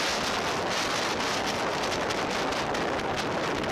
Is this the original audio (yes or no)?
yes